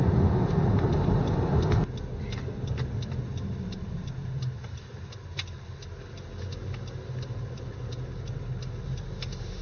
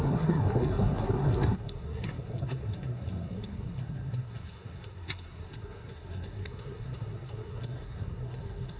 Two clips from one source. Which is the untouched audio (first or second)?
first